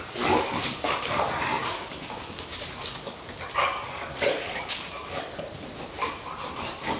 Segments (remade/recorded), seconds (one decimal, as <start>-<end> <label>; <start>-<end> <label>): 0.0-0.6 recorded; 0.6-1.2 remade; 1.2-1.6 recorded; 1.6-5.2 remade; 5.2-7.0 recorded